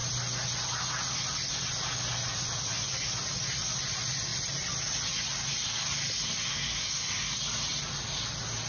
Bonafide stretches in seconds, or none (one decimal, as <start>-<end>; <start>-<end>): 0.0-8.7